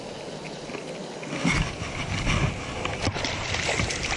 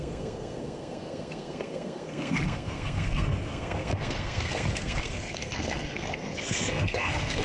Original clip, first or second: first